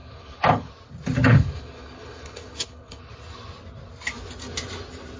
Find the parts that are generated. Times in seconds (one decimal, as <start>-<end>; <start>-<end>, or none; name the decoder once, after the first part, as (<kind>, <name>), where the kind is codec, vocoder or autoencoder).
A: 0.0-0.7 (codec, HILCodec); 1.2-3.0